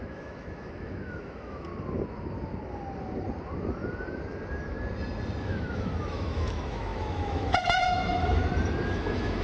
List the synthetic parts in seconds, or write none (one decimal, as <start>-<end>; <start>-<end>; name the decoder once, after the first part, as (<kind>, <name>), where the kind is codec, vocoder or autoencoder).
0.0-1.7 (autoencoder, DAC-VAE); 5.4-8.4; 8.9-9.4